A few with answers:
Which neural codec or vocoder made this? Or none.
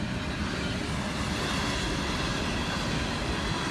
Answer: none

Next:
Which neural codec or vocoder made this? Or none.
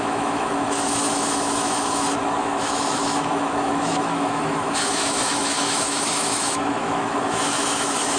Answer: autoencoder, DAC-VAE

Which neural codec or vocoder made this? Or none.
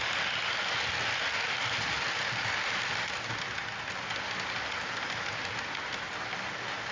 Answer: none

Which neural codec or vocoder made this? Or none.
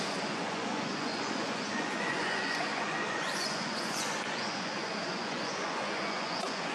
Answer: vocoder, Vocos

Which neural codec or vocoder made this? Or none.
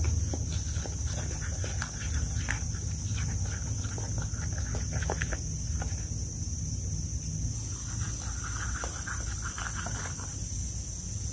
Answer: none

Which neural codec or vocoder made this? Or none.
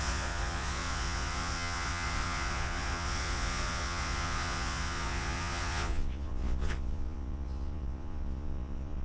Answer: vocoder, Vocos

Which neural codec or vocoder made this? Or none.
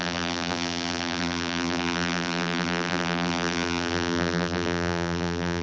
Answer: vocoder, BigVGAN v2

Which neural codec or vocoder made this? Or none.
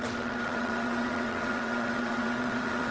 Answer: vocoder, WaveNeXt